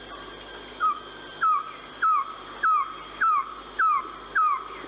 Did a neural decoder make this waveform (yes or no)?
no